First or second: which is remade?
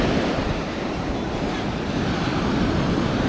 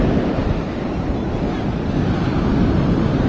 first